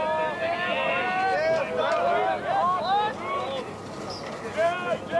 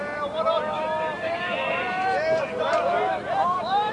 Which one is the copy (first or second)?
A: second